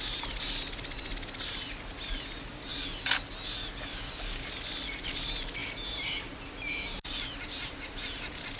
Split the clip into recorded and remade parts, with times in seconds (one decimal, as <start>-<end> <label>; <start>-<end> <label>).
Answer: 0.0-3.9 recorded; 3.9-4.5 remade; 4.5-8.6 recorded